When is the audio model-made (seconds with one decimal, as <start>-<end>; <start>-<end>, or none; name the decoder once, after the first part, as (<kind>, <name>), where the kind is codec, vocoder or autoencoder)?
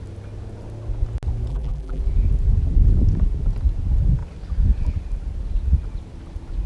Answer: 1.5-2.0 (vocoder, BigVGAN v2)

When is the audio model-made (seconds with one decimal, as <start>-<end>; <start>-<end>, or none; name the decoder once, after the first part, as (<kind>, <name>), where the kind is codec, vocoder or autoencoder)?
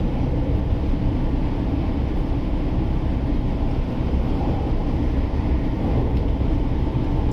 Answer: none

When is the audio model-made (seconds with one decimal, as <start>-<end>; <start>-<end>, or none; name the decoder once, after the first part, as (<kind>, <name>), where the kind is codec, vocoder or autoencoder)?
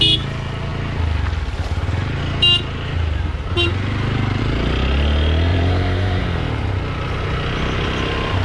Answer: 5.5-6.2 (vocoder, BigVGAN v2)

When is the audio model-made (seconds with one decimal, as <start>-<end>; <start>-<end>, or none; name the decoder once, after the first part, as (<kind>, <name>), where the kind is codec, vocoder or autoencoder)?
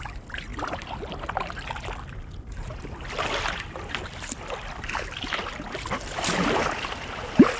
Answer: none